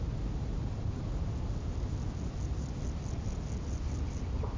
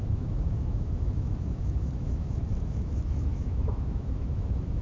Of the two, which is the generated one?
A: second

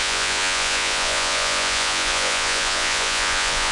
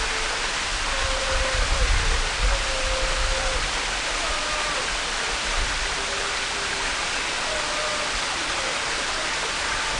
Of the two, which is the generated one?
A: first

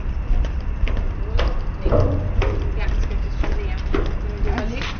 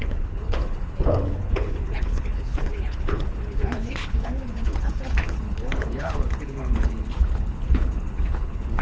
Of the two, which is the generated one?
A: second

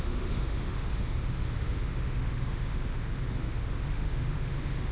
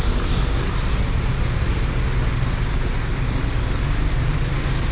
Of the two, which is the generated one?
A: first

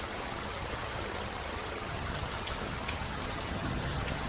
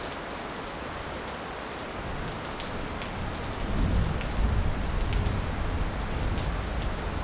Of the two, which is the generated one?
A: first